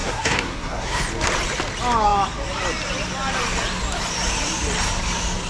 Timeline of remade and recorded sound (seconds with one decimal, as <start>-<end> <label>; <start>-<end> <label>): 0.0-1.0 remade; 1.0-5.5 recorded